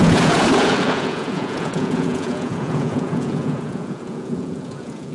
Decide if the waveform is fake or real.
fake